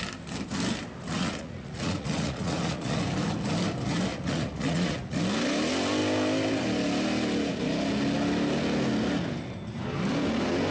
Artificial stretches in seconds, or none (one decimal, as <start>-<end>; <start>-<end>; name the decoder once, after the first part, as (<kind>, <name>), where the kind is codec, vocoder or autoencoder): 1.1-3.0 (vocoder, Vocos); 4.1-5.2